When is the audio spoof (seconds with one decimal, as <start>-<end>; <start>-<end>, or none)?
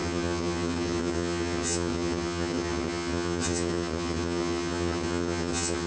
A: 0.0-5.9